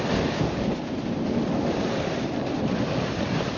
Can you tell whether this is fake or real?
real